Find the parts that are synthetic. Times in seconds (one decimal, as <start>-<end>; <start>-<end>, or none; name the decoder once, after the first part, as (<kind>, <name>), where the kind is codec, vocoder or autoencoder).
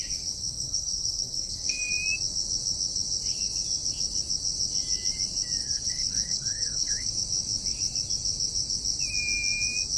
0.4-1.9 (codec, SNAC); 5.6-7.1